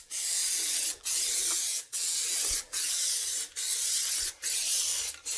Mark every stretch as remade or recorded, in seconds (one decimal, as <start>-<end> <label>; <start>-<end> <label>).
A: 0.0-3.3 remade; 3.3-5.4 recorded